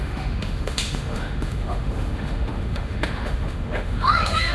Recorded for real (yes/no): no